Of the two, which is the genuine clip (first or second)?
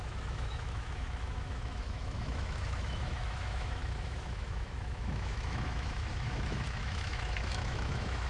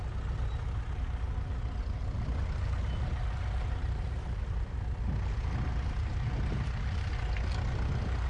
second